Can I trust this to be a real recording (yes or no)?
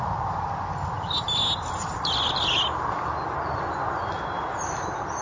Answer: yes